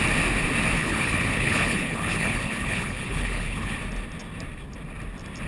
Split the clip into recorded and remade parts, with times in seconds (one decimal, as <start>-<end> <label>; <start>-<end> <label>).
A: 0.0-0.8 recorded; 0.8-3.8 remade; 3.8-5.5 recorded